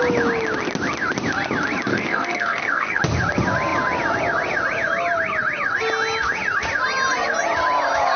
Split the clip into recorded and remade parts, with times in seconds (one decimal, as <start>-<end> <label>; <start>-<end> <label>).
0.0-1.9 recorded; 1.9-3.0 remade; 3.0-8.2 recorded